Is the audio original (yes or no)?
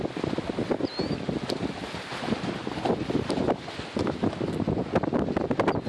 yes